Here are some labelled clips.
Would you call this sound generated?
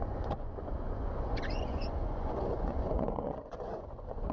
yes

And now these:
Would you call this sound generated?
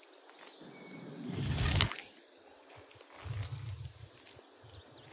no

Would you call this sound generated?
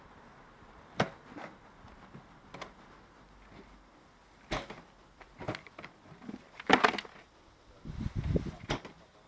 no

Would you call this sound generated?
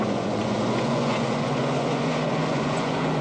yes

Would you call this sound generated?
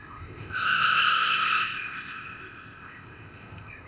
yes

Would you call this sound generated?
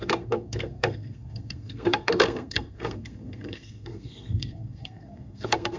yes